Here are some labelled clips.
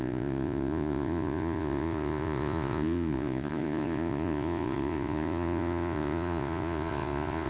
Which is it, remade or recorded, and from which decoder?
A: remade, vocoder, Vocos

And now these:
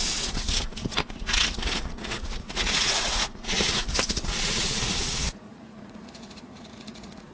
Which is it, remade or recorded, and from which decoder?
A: remade, vocoder, Vocos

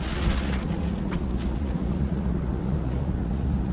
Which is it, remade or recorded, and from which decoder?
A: remade, vocoder, Vocos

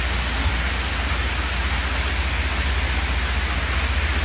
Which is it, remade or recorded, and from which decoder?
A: recorded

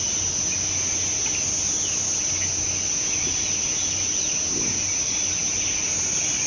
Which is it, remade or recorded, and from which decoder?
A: recorded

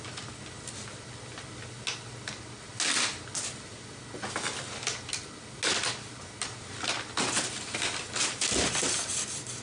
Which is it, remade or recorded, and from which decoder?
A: recorded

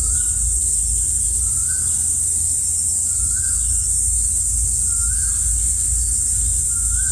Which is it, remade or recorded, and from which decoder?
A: recorded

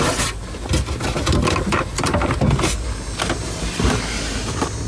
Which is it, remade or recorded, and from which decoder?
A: recorded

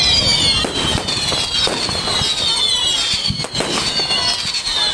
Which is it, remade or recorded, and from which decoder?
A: recorded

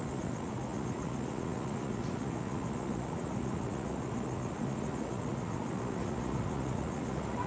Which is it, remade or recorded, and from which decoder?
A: remade, vocoder, Vocos